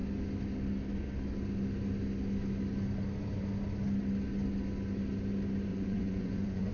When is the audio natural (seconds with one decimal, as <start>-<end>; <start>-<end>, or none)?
0.0-5.7